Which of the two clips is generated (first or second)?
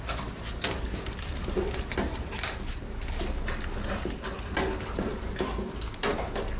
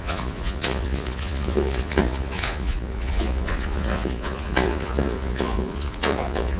second